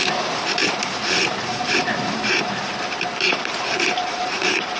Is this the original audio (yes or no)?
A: no